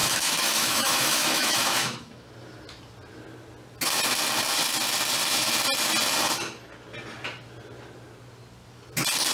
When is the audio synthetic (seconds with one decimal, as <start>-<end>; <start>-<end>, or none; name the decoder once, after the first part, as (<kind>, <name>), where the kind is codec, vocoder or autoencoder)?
0.0-2.3 (autoencoder, DAC-VAE)